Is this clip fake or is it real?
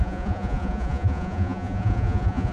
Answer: fake